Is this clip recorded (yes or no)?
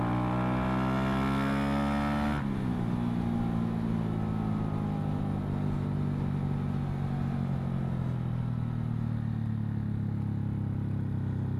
yes